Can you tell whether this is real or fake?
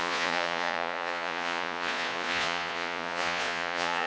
fake